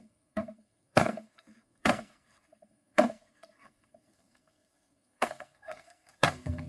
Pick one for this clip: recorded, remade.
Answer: remade